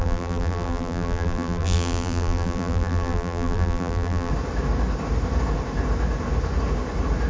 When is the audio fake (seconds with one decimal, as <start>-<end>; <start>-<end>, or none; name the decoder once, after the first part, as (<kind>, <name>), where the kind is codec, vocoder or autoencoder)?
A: 0.0-4.3 (vocoder, BigVGAN v2)